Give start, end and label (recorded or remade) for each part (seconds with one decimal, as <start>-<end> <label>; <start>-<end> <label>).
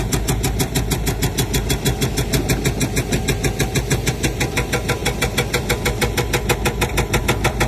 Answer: 0.0-7.7 recorded